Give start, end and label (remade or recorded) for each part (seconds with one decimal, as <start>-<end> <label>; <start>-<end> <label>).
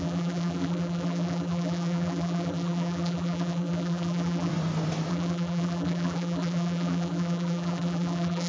0.0-4.5 remade; 4.5-5.1 recorded; 5.1-8.5 remade